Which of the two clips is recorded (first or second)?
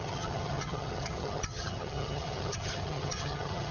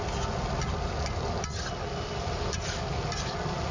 second